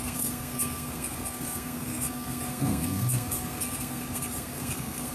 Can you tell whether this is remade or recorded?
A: remade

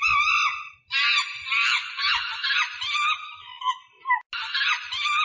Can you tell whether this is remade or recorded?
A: recorded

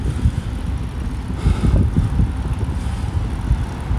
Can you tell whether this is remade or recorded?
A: recorded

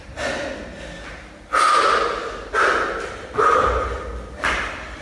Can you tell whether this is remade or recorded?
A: recorded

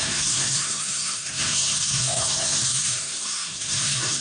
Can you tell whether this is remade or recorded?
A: remade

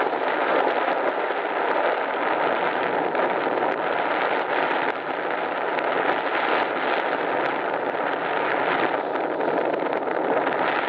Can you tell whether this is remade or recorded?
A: recorded